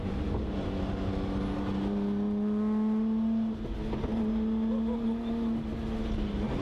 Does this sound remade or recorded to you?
recorded